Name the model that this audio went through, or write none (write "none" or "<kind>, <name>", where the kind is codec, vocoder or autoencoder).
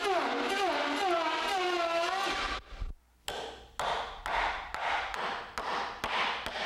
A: none